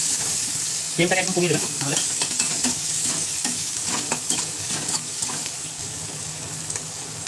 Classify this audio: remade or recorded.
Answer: remade